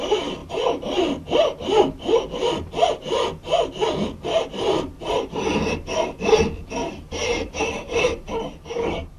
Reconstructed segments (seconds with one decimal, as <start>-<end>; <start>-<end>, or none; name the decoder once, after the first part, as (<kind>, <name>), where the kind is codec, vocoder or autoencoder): 7.2-7.8 (vocoder, BigVGAN v2)